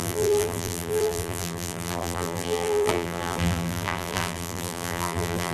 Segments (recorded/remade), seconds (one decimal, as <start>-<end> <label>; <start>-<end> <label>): 0.0-5.5 remade